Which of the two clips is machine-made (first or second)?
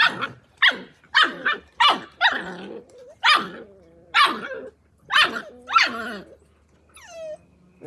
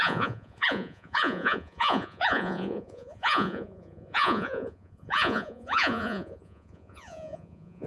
second